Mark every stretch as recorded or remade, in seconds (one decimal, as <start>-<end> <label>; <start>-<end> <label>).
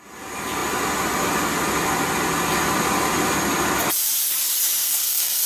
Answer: 0.0-4.8 recorded; 4.8-5.5 remade